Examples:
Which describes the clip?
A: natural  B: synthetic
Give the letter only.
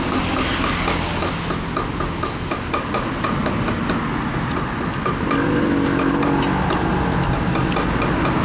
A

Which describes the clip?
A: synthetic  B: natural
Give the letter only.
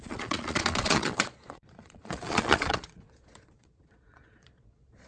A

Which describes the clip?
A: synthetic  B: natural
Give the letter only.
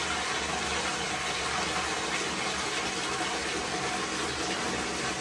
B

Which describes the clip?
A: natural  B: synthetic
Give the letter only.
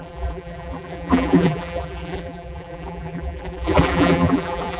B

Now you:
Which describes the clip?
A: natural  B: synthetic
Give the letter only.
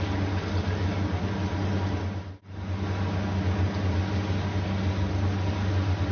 A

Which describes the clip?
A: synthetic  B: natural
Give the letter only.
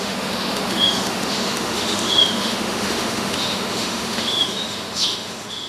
A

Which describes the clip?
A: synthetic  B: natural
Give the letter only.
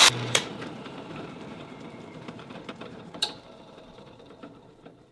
A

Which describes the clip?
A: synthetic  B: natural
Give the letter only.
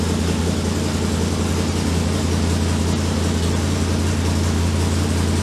B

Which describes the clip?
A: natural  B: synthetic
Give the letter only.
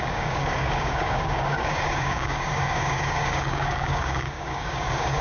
B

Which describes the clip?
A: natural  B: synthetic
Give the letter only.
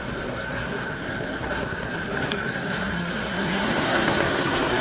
B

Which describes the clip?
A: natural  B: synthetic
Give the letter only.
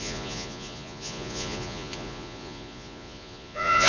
B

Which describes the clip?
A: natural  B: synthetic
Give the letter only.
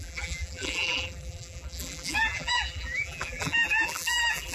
B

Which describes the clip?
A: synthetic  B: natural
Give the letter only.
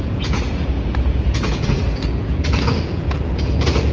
A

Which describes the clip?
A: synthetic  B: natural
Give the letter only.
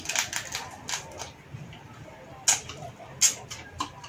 B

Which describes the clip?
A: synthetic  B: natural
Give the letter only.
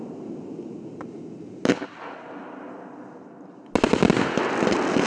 B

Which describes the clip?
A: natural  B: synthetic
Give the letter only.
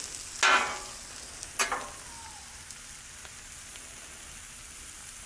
A